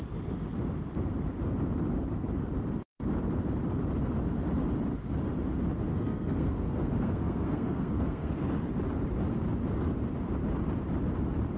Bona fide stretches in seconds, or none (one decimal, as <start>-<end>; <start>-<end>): 0.0-5.9; 8.3-11.6